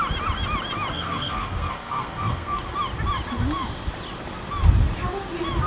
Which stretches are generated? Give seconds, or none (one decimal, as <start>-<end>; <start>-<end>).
0.9-2.6